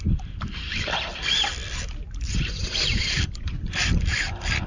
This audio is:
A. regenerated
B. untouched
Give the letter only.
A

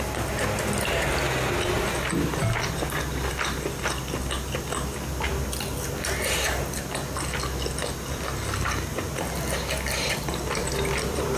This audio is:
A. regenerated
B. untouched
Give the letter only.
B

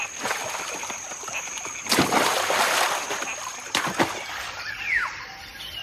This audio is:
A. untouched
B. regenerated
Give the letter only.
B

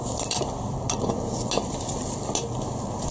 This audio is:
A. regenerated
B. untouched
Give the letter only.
B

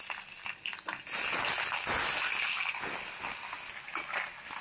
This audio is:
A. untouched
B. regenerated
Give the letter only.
A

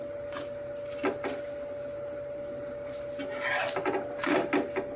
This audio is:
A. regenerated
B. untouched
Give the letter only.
B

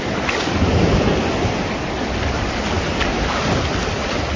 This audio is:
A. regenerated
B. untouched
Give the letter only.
B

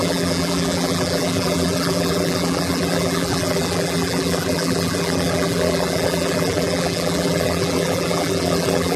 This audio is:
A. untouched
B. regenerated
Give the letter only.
B